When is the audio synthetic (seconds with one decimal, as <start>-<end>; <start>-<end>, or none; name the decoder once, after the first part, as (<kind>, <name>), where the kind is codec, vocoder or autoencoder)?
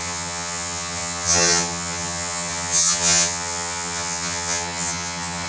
0.0-5.5 (vocoder, HiFi-GAN)